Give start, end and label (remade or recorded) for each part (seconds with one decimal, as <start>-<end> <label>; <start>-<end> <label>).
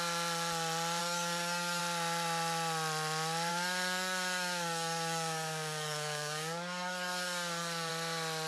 0.0-1.0 recorded; 1.0-1.8 remade; 1.8-3.5 recorded; 3.5-7.9 remade; 7.9-8.5 recorded